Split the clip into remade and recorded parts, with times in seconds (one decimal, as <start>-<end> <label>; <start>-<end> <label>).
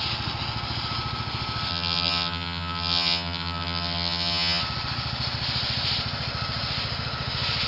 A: 0.0-1.7 recorded; 1.7-4.6 remade; 4.6-7.7 recorded